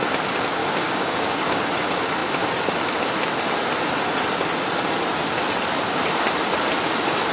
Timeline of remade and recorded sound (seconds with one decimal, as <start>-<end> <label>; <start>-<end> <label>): 0.0-0.6 recorded; 0.6-1.6 remade; 1.6-7.3 recorded